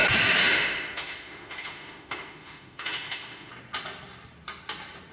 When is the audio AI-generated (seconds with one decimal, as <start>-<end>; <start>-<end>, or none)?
0.4-3.5